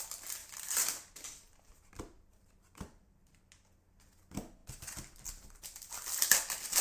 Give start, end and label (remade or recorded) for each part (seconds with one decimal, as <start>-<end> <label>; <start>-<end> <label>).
0.0-0.4 recorded; 0.4-3.4 remade; 3.4-6.8 recorded